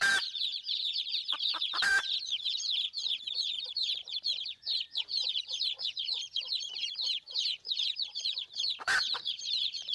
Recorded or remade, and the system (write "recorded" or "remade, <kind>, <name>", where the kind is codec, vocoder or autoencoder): remade, vocoder, Vocos